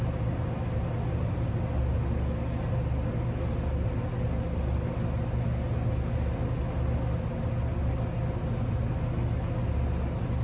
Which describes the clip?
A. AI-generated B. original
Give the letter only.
B